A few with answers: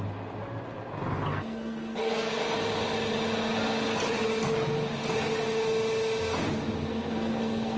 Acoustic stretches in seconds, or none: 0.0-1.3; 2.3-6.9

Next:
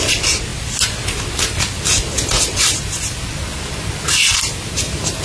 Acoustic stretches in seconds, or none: 0.0-5.2

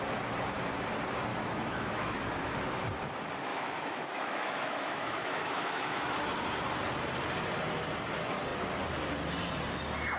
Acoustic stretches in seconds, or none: 0.0-1.3; 2.5-3.5; 6.1-10.2

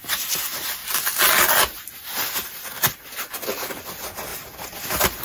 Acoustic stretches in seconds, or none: 0.0-4.3

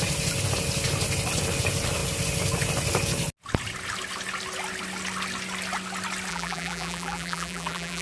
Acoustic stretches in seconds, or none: 0.0-6.3

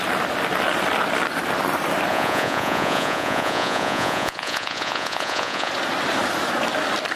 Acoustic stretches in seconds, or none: 0.0-2.1; 5.7-7.2